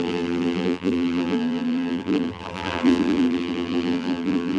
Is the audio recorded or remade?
remade